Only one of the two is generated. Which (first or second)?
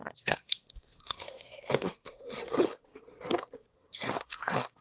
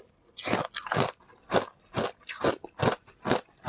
first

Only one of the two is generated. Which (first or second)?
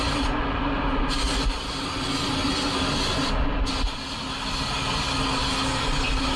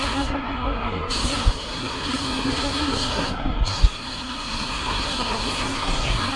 second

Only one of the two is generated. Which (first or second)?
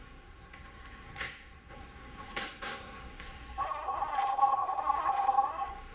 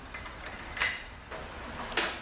first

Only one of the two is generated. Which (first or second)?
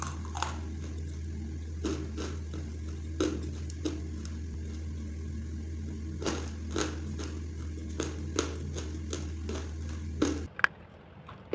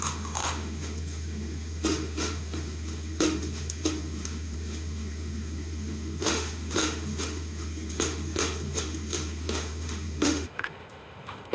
second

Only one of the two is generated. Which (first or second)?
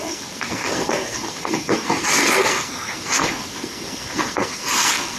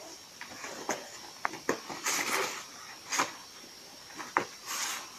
first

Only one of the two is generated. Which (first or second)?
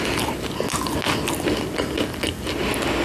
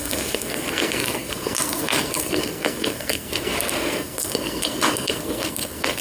second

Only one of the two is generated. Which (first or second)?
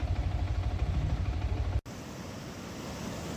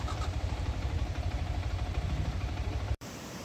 second